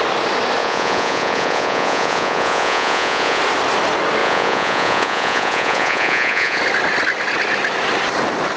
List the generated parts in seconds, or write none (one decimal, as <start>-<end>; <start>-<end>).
0.6-3.4; 4.2-6.6